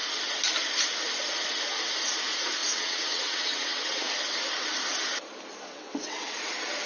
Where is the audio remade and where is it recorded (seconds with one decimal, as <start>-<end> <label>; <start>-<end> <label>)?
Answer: 0.0-2.6 recorded; 2.6-4.1 remade; 4.1-5.7 recorded; 5.7-6.4 remade; 6.4-6.9 recorded